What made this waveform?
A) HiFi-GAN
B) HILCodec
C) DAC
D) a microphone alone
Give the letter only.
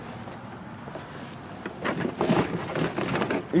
D